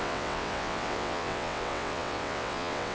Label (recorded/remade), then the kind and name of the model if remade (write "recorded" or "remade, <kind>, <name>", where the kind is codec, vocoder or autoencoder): remade, vocoder, WaveNeXt